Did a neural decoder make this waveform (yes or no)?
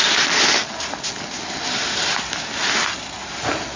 no